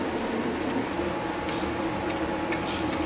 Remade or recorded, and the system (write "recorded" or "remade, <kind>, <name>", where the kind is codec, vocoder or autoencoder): recorded